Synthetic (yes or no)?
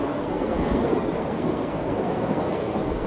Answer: yes